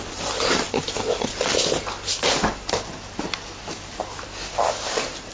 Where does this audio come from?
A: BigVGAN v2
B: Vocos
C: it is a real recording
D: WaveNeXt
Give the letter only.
C